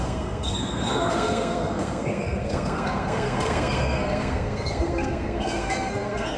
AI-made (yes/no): yes